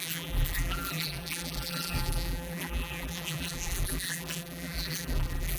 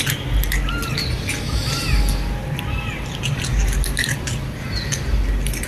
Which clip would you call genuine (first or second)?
second